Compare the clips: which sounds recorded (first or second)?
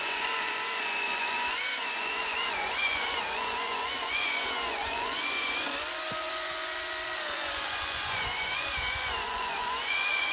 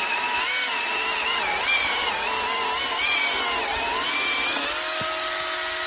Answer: second